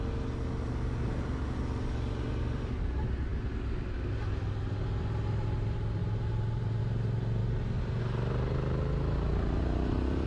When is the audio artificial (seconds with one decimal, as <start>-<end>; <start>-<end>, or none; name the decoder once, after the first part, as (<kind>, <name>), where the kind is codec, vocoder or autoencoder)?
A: 6.0-6.8 (vocoder, BigVGAN v2)